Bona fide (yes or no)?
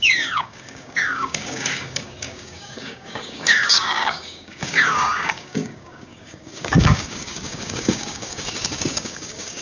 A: no